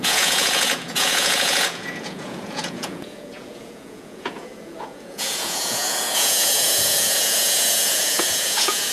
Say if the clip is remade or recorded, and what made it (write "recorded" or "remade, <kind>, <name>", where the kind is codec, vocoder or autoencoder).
remade, vocoder, Vocos